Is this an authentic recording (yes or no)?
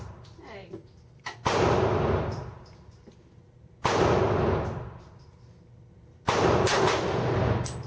yes